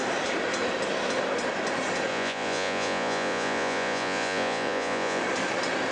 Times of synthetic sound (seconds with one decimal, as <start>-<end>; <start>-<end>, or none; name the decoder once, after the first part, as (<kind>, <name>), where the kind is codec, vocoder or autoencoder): 2.1-5.2 (vocoder, Vocos)

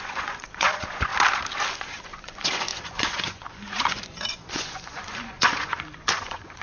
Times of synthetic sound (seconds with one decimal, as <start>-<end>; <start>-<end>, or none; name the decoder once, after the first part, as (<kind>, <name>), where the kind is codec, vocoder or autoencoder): 0.0-1.1 (vocoder, Vocos); 1.7-6.6

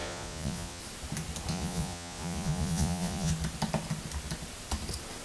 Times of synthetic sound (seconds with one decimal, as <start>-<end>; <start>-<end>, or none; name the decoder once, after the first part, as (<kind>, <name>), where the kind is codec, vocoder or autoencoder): 0.0-0.8 (vocoder, Vocos); 1.5-3.3

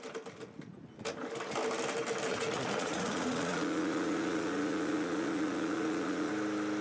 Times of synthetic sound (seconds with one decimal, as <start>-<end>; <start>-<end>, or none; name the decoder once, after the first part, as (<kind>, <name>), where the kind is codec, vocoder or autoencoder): 2.3-6.3 (vocoder, Vocos)